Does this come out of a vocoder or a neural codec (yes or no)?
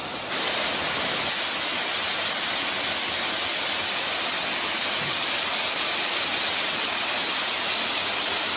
no